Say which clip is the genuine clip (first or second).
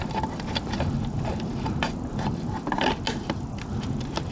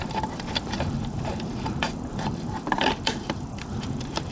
first